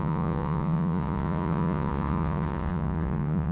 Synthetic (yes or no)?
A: yes